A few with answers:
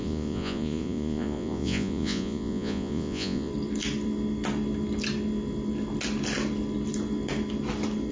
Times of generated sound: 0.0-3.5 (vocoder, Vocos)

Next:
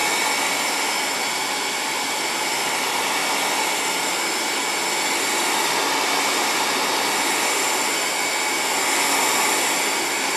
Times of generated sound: none

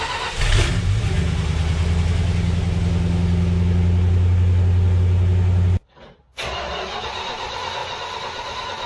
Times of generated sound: none

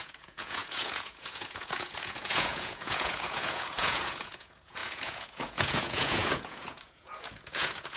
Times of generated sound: 0.0-8.0 (vocoder, Vocos)

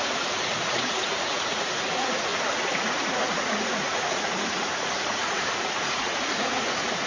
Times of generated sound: 0.0-7.1 (vocoder, Vocos)

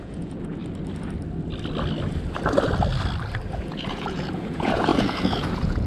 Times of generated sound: 0.0-0.6 (vocoder, Vocos); 3.5-5.9

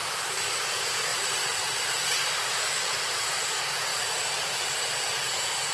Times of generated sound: 0.6-1.1 (vocoder, Vocos); 2.8-3.9; 5.1-5.7